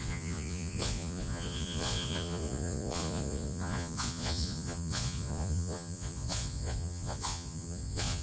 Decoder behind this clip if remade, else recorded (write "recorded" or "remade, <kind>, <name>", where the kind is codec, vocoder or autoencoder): remade, vocoder, Vocos